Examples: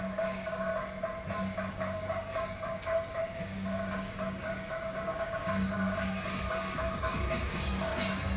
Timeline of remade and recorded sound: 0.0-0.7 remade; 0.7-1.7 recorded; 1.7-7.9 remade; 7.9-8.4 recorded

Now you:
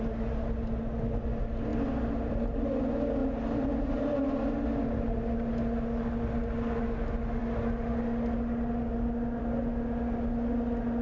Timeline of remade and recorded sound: 0.0-11.0 recorded

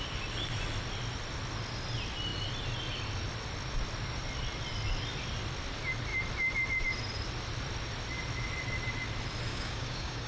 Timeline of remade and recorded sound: 0.0-9.5 recorded; 9.5-10.3 remade

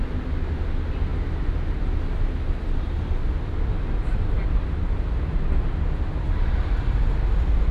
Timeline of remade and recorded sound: 0.0-7.7 recorded

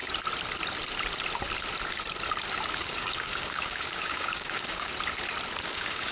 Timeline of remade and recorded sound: 0.0-2.7 recorded; 2.7-4.9 remade; 4.9-5.6 recorded; 5.6-6.1 remade

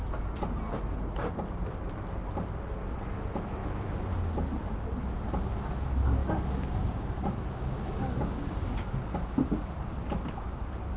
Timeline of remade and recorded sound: 0.0-6.2 recorded; 6.2-9.1 remade; 9.1-11.0 recorded

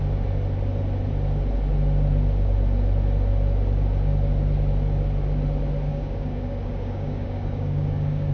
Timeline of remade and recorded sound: 0.0-5.9 recorded; 5.9-8.3 remade